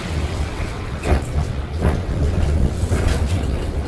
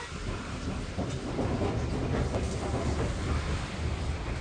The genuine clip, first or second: second